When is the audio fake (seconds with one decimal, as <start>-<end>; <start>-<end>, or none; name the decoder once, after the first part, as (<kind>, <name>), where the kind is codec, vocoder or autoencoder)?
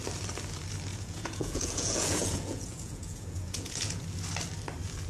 0.9-4.0 (vocoder, Vocos)